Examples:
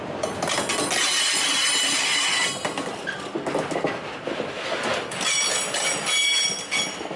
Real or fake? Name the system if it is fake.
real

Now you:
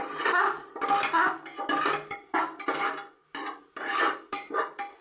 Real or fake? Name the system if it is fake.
real